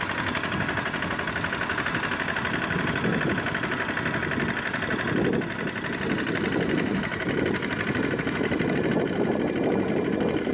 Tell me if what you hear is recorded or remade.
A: recorded